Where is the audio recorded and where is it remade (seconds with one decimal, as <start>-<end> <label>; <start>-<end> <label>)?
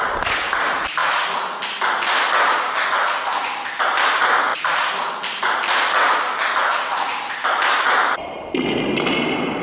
0.0-4.5 recorded; 4.5-5.1 remade; 5.1-6.7 recorded; 6.7-8.4 remade; 8.4-9.6 recorded